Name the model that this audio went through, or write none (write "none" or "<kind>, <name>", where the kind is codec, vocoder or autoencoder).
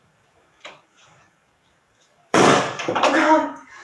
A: codec, DAC